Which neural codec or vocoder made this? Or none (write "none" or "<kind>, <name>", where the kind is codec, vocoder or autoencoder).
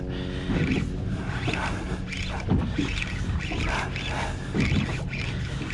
none